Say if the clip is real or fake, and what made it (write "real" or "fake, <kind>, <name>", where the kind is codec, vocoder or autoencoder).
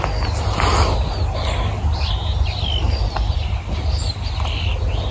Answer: real